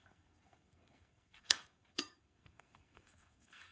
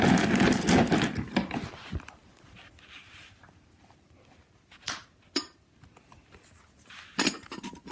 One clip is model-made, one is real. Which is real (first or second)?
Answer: second